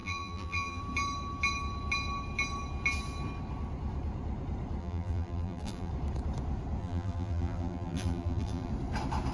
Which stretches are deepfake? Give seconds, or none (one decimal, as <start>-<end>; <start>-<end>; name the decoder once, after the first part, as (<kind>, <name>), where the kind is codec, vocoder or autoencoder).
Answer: 0.0-0.8 (vocoder, BigVGAN v2); 4.8-5.9; 6.8-8.7